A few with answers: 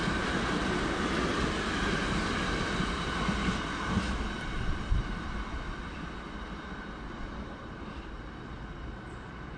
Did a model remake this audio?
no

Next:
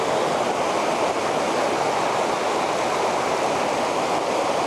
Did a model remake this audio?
no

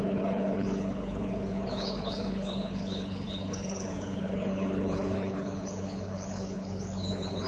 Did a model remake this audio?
yes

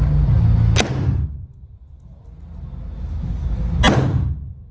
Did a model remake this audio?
no